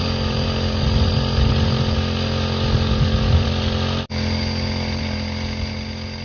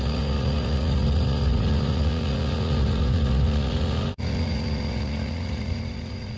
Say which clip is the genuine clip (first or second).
first